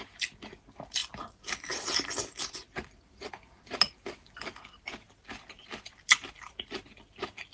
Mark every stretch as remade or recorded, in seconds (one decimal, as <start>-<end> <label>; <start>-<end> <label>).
0.0-1.0 recorded; 1.0-3.3 remade; 3.3-7.5 recorded